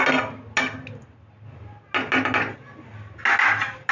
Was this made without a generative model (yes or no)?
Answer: yes